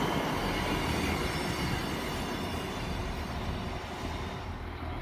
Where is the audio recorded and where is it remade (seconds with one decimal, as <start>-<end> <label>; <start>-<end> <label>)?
0.0-5.0 recorded